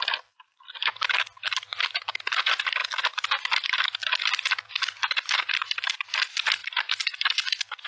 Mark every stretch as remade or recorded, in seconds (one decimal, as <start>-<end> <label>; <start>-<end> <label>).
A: 0.0-2.8 recorded; 2.8-4.3 remade; 4.3-7.9 recorded